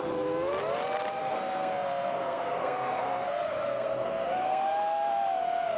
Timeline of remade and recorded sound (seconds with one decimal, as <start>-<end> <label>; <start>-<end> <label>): 0.0-1.2 recorded; 1.2-4.7 remade; 4.7-5.8 recorded